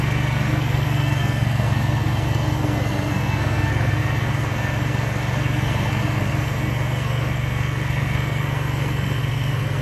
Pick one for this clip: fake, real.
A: fake